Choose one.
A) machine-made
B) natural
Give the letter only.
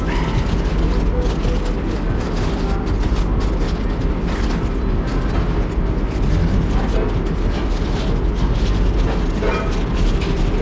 B